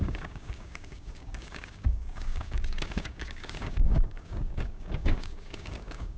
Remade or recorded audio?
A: remade